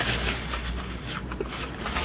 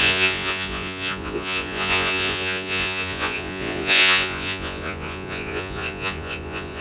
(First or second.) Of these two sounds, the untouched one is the first